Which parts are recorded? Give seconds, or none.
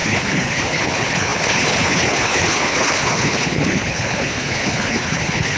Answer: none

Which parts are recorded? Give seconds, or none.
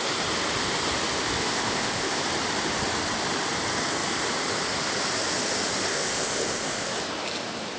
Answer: 0.0-1.4; 2.2-5.9; 6.9-7.8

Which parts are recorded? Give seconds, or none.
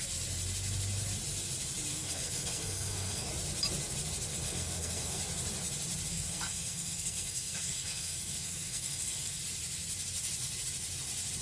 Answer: 0.0-1.9; 3.3-4.3; 5.2-6.1; 9.4-11.4